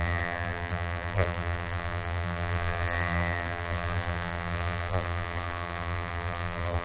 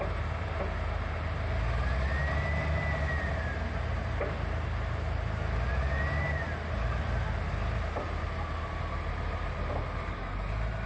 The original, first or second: second